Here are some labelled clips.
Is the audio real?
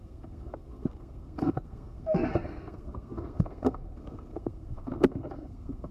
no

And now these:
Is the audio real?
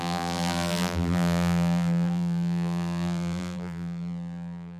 no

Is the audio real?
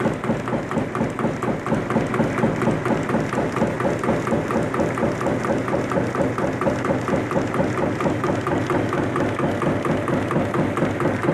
yes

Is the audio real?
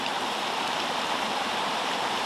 no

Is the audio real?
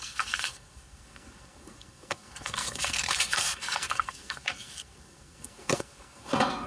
no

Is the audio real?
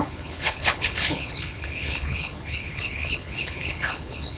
no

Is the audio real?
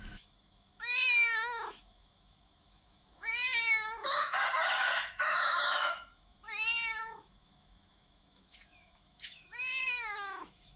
no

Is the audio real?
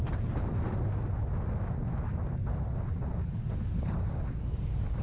yes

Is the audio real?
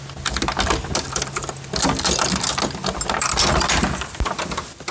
yes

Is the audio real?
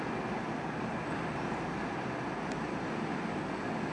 yes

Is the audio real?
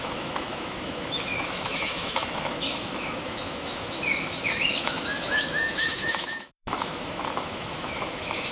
no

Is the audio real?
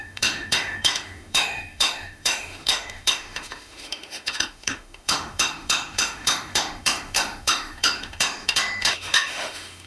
no